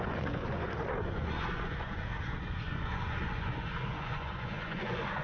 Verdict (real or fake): fake